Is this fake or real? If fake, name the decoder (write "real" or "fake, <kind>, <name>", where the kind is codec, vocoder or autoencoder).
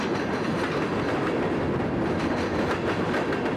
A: real